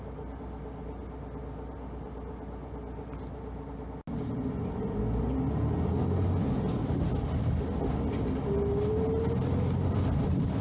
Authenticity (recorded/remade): recorded